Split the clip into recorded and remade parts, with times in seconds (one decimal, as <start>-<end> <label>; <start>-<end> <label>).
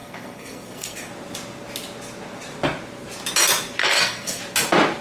0.0-1.1 remade; 1.1-3.8 recorded; 3.8-4.4 remade; 4.4-5.0 recorded